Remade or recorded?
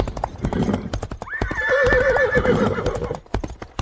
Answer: remade